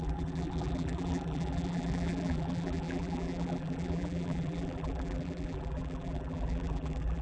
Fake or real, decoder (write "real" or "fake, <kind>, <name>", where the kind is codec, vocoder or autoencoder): fake, vocoder, BigVGAN v2